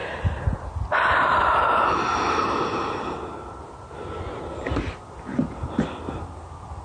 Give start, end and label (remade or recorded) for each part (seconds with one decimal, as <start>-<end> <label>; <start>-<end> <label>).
0.0-1.4 remade; 1.4-6.8 recorded